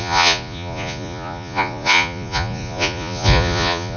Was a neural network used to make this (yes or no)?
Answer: yes